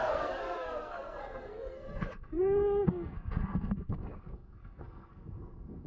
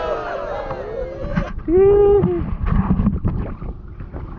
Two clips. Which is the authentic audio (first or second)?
second